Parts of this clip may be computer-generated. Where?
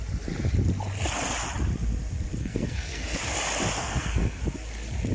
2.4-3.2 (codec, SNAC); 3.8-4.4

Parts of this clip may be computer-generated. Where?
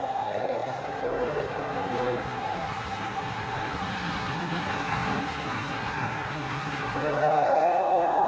0.0-8.3 (codec, SNAC)